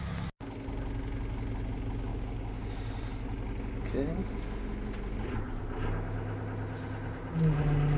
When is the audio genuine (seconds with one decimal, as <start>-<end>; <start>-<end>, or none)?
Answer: 0.0-2.1; 2.7-8.0